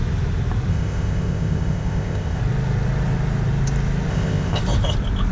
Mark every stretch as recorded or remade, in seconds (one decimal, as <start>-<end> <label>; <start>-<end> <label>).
0.0-0.7 recorded; 0.7-2.4 remade; 2.4-4.1 recorded; 4.1-4.6 remade; 4.6-5.3 recorded